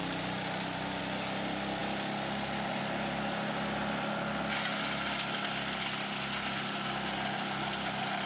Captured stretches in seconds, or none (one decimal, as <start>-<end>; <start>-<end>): 1.0-8.3